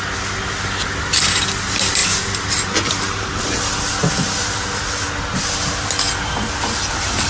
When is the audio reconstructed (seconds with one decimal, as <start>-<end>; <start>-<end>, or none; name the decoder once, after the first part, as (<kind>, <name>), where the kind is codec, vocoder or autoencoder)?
none